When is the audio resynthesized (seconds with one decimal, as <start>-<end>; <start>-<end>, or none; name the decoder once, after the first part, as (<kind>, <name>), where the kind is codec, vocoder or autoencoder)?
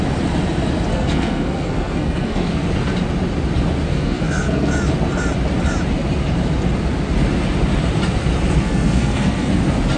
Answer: 0.9-2.7 (codec, SNAC); 3.9-4.7; 8.6-9.5